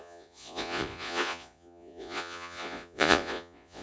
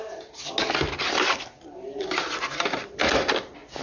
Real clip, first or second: second